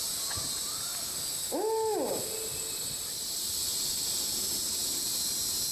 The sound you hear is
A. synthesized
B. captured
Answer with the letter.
B